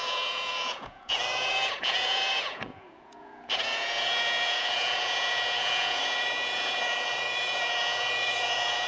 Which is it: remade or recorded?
remade